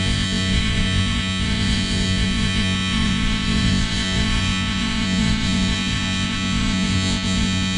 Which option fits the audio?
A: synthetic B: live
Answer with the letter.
A